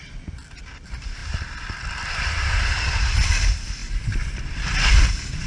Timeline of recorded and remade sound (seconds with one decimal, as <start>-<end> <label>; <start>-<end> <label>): 0.0-5.5 recorded